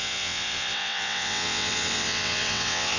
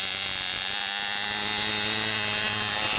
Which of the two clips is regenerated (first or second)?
first